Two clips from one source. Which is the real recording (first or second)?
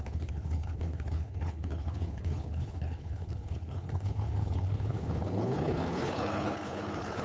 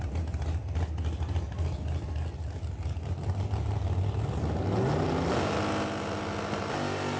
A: second